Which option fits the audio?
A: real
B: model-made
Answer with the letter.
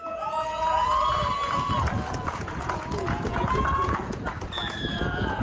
B